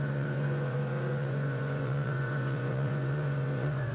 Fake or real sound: fake